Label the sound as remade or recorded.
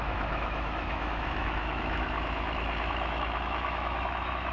remade